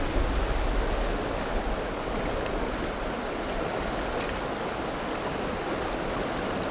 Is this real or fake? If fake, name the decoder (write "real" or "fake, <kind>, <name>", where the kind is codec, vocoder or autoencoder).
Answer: real